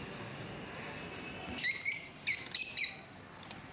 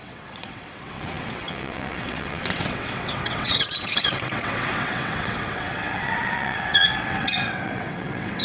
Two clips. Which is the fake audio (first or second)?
second